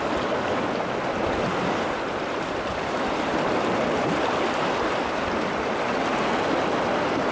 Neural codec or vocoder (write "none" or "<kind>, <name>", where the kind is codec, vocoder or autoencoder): none